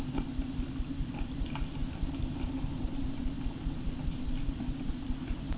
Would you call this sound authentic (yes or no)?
yes